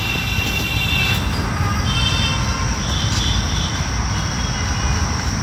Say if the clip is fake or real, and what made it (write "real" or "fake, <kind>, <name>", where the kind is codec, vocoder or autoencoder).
real